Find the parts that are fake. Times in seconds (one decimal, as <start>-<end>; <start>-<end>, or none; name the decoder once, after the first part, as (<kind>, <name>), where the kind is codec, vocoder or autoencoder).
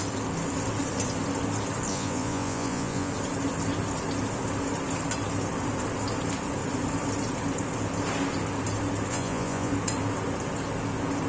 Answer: 1.9-3.1 (vocoder, Vocos); 9.1-9.7